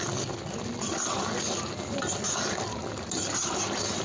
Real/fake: real